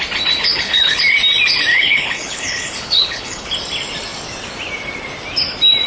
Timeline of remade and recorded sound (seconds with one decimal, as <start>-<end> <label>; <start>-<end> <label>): 0.0-0.5 recorded; 0.5-1.0 remade; 1.0-1.7 recorded; 1.7-3.5 remade; 3.5-5.9 recorded